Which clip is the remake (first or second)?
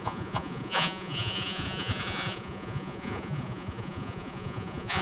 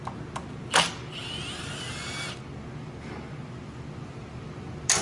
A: first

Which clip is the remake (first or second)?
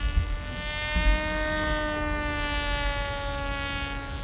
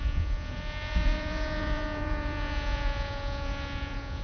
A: second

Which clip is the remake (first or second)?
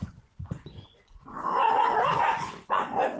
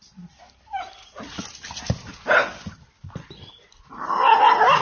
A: first